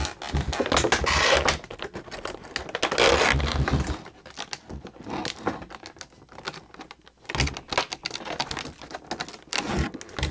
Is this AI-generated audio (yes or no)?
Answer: no